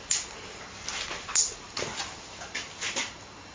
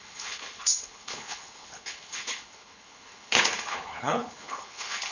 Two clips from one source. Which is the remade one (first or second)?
second